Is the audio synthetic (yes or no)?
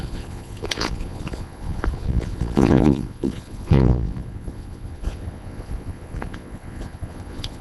yes